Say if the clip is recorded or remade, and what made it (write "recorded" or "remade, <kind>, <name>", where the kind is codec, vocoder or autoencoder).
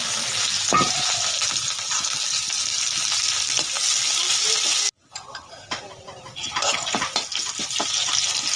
recorded